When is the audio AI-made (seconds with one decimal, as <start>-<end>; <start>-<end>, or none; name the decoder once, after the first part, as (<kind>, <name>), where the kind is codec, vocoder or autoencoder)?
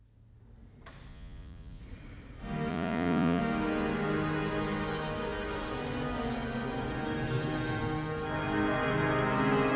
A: 1.1-1.8 (vocoder, Vocos); 2.7-3.4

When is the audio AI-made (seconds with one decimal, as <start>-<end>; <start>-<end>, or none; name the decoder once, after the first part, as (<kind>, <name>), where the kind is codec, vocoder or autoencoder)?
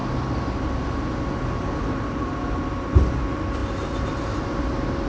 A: none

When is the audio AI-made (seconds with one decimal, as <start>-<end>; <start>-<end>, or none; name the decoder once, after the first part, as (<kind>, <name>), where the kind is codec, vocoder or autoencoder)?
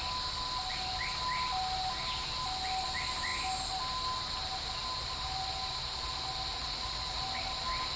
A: 6.5-7.2 (vocoder, Vocos)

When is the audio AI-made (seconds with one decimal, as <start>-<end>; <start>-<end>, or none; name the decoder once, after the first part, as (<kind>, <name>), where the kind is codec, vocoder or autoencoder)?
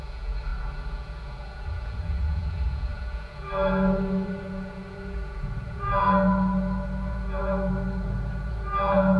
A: 0.0-9.2 (vocoder, Vocos)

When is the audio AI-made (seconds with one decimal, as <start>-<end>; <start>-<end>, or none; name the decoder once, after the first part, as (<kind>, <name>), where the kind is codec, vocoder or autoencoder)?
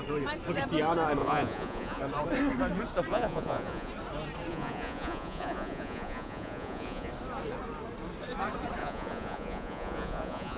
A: 1.2-2.0 (vocoder, Vocos); 3.1-3.9; 4.5-7.1; 8.8-10.6